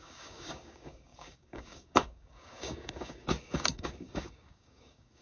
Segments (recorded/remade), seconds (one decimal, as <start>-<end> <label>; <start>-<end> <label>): 0.0-5.2 remade